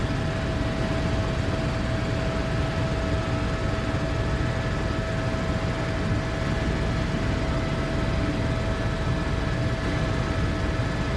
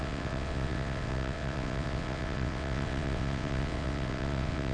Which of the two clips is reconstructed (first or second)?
second